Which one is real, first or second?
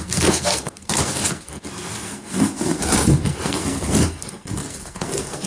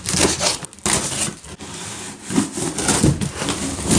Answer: second